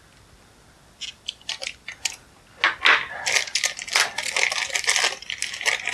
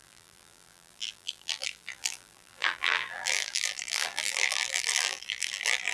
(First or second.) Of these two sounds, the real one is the first